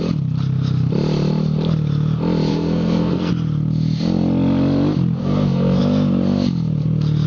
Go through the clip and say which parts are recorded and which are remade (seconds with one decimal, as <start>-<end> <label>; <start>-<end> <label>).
0.0-2.5 recorded; 2.5-3.3 remade; 3.3-5.2 recorded; 5.2-5.8 remade; 5.8-7.3 recorded